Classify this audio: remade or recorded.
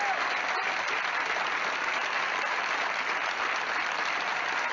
recorded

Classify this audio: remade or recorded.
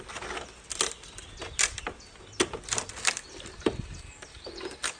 recorded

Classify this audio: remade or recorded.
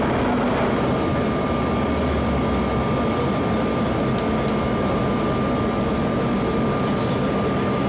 recorded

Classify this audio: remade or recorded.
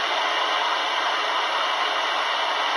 recorded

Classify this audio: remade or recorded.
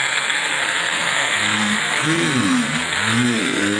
remade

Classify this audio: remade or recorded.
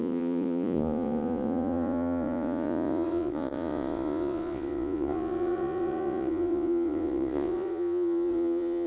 remade